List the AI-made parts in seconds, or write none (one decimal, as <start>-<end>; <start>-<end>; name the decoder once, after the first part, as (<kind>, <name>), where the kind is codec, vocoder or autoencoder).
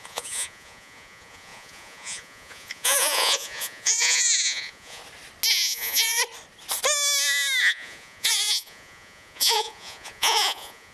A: 0.0-5.0 (vocoder, Vocos); 5.5-6.2; 7.6-10.9